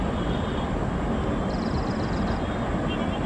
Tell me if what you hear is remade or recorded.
recorded